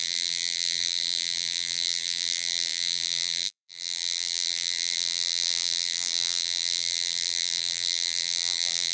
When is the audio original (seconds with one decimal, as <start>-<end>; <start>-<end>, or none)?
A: none